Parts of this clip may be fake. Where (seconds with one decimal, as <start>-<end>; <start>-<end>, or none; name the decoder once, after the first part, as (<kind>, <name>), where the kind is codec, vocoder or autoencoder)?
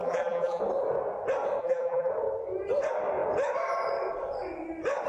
0.0-0.6 (vocoder, BigVGAN v2); 1.6-2.1